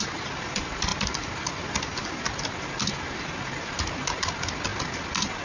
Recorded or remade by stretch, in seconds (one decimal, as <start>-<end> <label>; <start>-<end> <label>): 0.0-5.4 recorded